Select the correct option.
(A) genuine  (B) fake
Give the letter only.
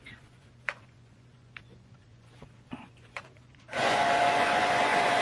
B